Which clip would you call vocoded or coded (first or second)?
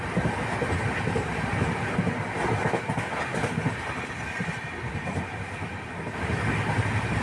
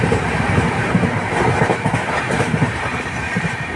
second